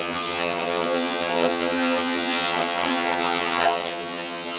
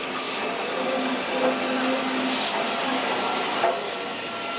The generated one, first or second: first